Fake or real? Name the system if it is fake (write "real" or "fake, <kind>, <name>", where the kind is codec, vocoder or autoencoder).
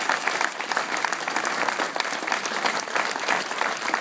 real